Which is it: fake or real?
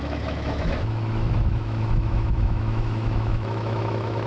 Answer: fake